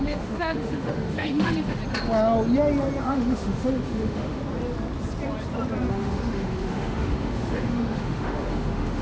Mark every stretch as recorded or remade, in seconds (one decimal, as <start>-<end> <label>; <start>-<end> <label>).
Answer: 0.0-1.8 remade; 1.8-3.0 recorded; 3.0-4.4 remade; 4.4-5.9 recorded; 5.9-9.0 remade